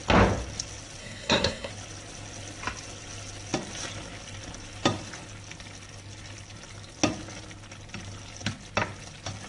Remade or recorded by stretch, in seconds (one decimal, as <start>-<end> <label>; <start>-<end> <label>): 0.0-1.0 recorded; 1.0-1.7 remade; 1.7-9.5 recorded